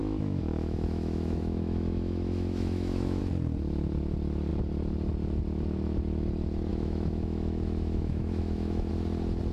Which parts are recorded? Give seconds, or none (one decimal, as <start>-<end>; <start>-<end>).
3.2-6.7; 8.9-9.5